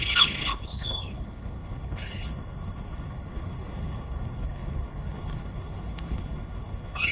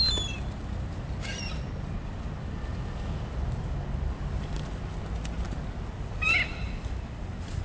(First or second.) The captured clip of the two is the second